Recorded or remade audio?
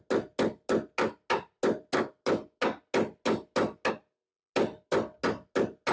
recorded